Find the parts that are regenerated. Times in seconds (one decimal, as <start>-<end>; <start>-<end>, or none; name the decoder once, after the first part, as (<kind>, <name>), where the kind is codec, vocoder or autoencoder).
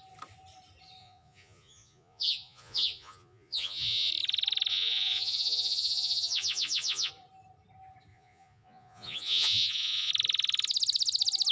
1.0-4.1 (vocoder, Vocos); 4.7-7.1; 8.1-10.1